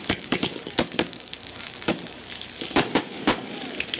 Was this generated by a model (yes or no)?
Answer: yes